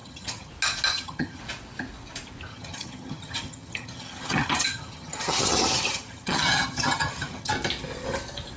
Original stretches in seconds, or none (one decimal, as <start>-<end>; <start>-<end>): 0.5-0.9; 1.4-2.5; 7.5-8.6